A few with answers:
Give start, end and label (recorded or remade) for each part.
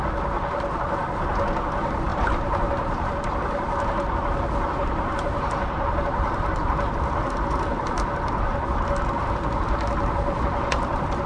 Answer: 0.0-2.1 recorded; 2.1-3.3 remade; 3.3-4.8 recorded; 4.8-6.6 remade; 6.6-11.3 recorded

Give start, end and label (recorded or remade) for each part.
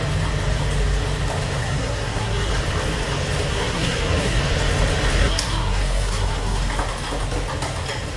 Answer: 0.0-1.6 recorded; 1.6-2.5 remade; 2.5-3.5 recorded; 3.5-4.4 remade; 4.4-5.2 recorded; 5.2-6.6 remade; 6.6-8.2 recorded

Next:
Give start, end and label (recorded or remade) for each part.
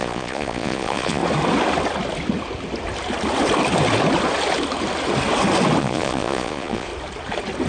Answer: 0.0-1.2 remade; 1.2-5.8 recorded; 5.8-6.9 remade; 6.9-7.7 recorded